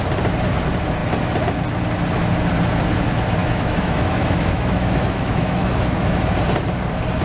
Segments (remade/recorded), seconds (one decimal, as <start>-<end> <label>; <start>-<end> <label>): 0.0-3.4 recorded; 3.4-6.2 remade; 6.2-7.2 recorded